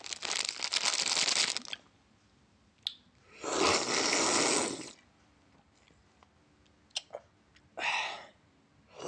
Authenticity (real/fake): real